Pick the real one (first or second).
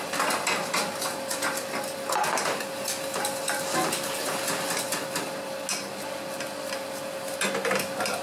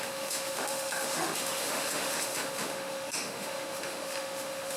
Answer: first